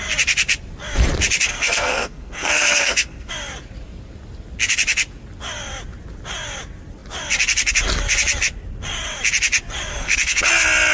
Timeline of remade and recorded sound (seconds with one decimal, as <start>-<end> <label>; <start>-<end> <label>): 0.0-1.5 recorded; 1.5-3.3 remade; 3.3-9.9 recorded; 9.9-10.4 remade; 10.4-10.9 recorded